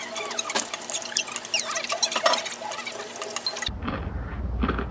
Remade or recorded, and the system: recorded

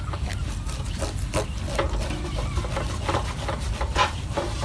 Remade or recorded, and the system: recorded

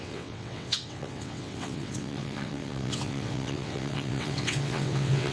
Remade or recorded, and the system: remade, vocoder, WaveNeXt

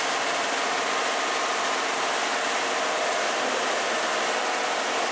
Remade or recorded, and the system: recorded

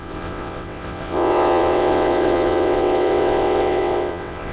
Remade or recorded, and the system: remade, vocoder, WaveNeXt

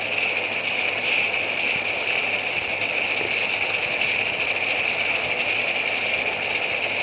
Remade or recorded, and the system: recorded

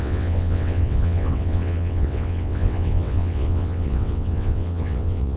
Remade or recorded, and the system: remade, vocoder, WaveNeXt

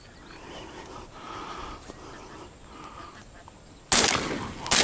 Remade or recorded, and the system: recorded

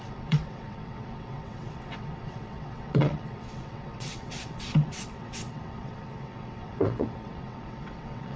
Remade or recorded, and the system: remade, vocoder, WaveNeXt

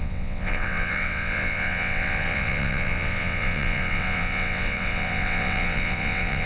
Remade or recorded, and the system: remade, vocoder, WaveNeXt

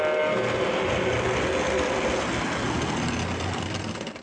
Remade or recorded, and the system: recorded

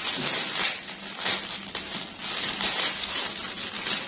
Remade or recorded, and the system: recorded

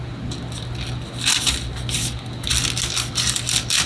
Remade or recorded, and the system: recorded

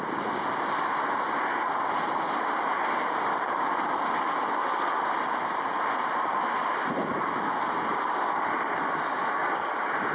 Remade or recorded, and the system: recorded